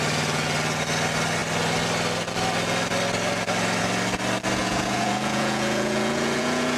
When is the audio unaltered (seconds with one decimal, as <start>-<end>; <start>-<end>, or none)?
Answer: 0.0-4.6